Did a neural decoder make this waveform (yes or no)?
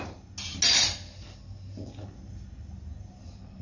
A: no